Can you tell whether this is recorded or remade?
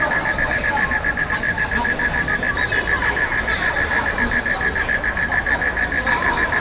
remade